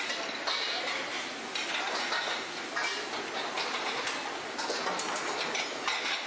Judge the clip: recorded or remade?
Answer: recorded